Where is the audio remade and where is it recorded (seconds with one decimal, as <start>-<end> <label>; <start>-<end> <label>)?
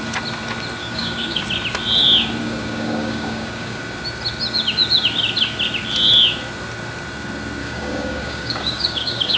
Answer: 0.0-0.8 recorded; 0.8-1.4 remade; 1.4-2.4 recorded; 2.4-3.8 remade; 3.8-7.6 recorded; 7.6-9.4 remade